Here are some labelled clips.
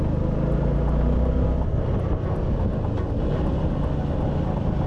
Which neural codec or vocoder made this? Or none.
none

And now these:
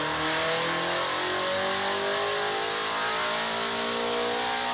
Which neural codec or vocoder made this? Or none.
none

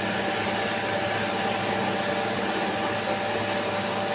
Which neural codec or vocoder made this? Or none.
none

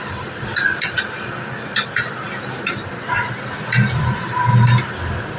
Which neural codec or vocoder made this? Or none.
none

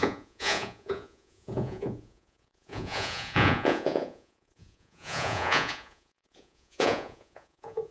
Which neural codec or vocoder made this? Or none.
vocoder, Vocos